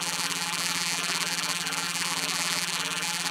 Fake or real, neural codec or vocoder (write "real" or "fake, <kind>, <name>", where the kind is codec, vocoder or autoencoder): fake, vocoder, BigVGAN v2